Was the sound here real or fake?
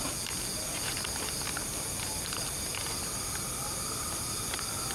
real